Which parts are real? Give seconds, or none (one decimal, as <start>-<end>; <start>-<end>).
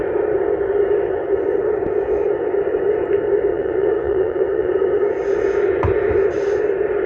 0.0-3.5; 4.7-7.1